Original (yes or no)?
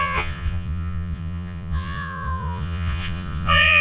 no